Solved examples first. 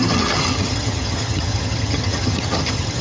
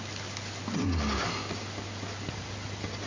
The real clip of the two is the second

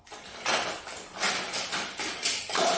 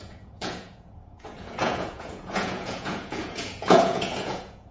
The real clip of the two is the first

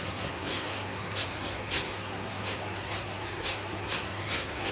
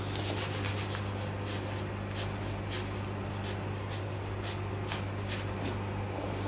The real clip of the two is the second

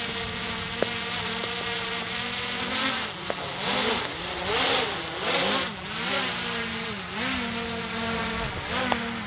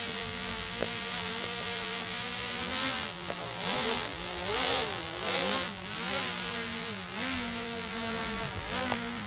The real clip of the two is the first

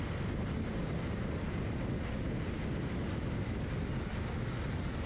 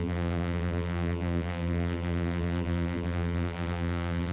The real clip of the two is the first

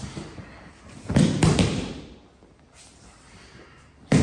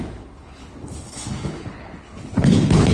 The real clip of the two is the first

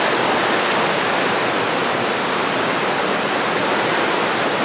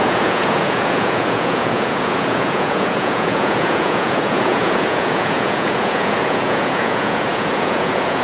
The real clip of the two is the first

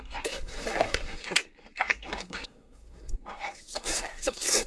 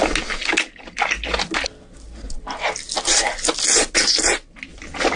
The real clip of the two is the second